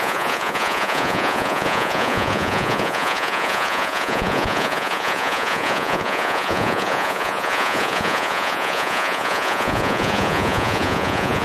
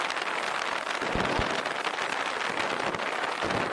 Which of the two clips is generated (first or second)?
first